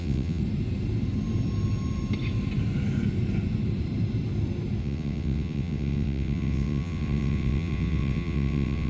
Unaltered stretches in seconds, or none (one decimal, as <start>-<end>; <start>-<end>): 0.4-4.8